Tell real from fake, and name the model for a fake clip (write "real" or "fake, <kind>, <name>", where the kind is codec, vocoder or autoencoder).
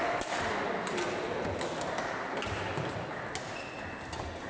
real